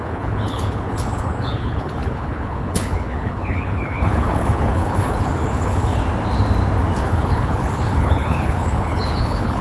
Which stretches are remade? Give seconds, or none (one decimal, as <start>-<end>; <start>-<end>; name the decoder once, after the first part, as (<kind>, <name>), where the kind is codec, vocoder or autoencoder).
0.0-6.0 (codec, HILCodec); 7.0-9.6